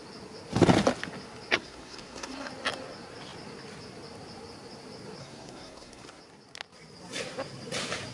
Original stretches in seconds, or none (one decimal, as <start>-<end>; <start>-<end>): 0.0-1.5; 2.5-5.2; 6.2-8.1